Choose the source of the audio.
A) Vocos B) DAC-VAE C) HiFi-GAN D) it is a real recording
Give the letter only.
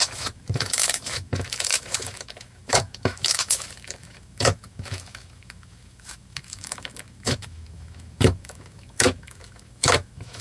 B